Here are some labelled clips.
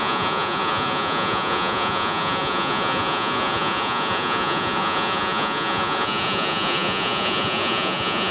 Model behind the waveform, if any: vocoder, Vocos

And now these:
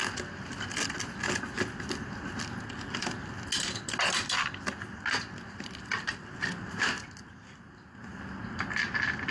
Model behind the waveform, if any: none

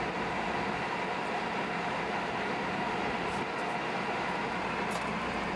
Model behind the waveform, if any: vocoder, BigVGAN v2